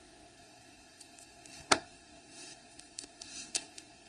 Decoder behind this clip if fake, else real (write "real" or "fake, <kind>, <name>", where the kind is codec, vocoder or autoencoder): fake, codec, SNAC